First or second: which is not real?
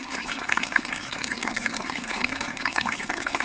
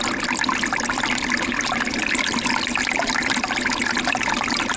first